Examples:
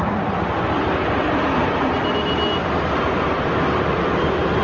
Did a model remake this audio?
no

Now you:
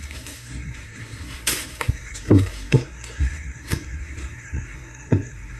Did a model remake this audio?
yes